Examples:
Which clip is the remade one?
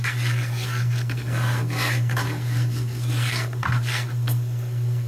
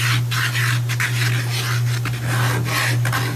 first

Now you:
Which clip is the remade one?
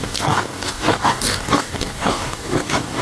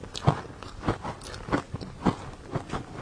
first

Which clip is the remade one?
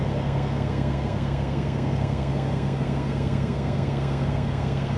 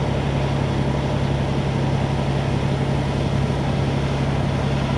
first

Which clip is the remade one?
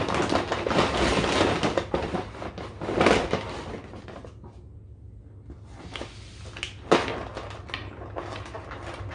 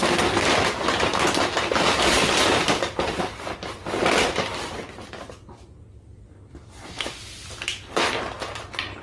second